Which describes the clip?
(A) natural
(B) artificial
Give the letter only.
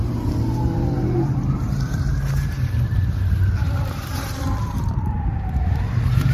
B